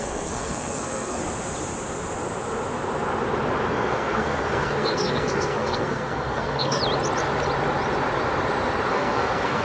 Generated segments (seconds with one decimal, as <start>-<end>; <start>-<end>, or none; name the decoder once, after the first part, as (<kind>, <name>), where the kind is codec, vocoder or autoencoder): 0.0-1.2 (codec, SNAC); 3.7-6.8; 8.9-9.6

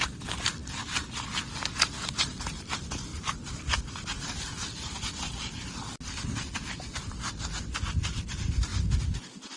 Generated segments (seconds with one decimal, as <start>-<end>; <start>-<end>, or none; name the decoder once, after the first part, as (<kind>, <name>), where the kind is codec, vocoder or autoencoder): none

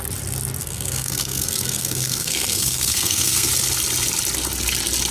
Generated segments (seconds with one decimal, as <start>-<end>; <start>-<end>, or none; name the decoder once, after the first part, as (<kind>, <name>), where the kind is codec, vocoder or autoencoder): 0.6-3.5 (codec, SNAC)